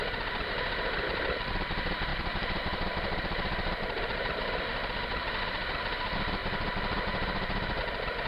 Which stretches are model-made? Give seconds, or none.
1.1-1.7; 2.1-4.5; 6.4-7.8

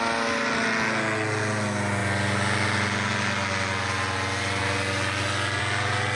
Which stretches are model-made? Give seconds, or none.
none

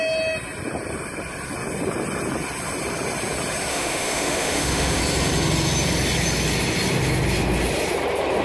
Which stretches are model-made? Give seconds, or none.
3.7-5.0